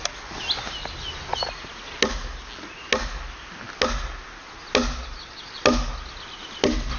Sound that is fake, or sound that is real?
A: real